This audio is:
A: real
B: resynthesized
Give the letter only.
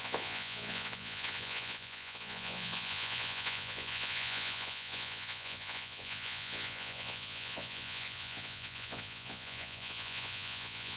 B